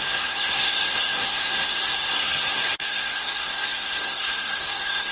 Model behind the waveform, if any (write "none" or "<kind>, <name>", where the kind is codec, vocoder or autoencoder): codec, SNAC